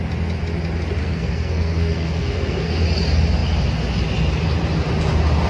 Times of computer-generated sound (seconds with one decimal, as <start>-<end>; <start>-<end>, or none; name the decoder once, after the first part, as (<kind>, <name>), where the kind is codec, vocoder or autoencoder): 1.0-2.8 (codec, SNAC)